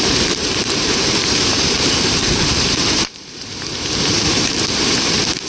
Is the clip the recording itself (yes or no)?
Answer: no